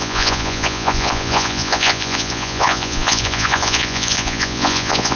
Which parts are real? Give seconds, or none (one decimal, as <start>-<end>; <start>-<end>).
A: none